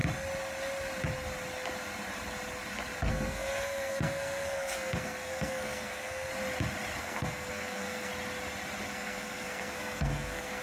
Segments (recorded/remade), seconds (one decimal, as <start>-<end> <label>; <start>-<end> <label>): 0.0-3.1 recorded; 3.1-6.3 remade; 6.3-7.0 recorded; 7.0-8.1 remade; 8.1-8.9 recorded; 8.9-10.6 remade